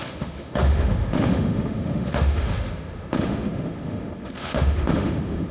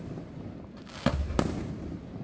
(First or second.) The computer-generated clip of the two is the first